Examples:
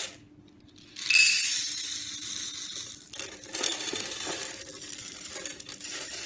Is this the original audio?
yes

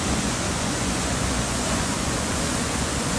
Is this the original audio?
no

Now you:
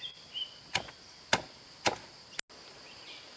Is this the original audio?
yes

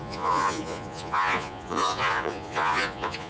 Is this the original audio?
no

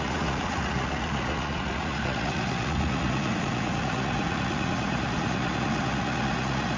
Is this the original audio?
no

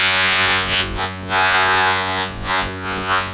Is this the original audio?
no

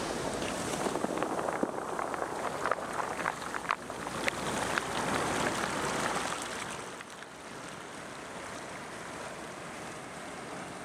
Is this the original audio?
yes